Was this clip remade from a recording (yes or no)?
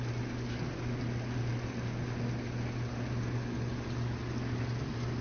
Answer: no